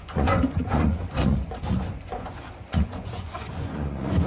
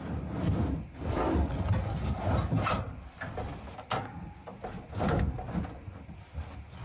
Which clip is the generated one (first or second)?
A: first